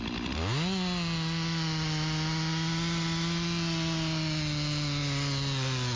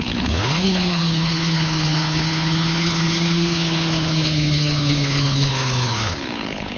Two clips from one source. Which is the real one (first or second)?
first